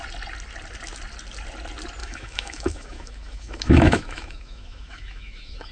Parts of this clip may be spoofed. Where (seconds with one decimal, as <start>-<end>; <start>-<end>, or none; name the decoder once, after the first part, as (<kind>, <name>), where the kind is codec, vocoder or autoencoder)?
2.0-5.7 (autoencoder, DAC-VAE)